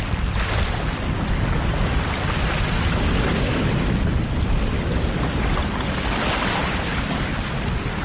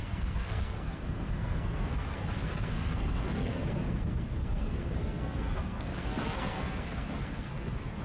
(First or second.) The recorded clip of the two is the first